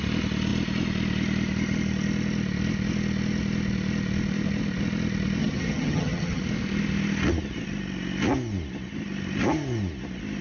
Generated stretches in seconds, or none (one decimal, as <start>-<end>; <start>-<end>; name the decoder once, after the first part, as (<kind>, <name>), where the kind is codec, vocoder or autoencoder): 5.4-6.4 (vocoder, HiFi-GAN)